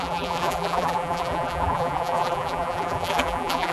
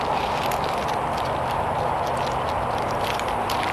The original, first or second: second